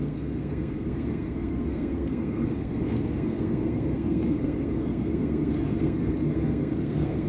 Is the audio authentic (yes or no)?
no